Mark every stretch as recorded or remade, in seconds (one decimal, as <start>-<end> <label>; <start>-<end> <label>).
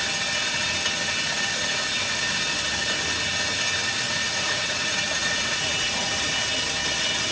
0.0-4.2 recorded; 4.2-6.1 remade; 6.1-7.3 recorded